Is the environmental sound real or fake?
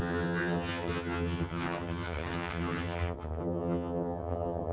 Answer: fake